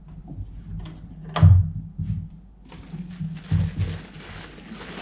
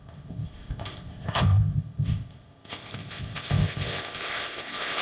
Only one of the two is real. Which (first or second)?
first